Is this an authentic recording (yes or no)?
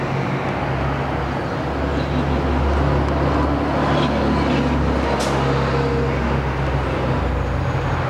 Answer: yes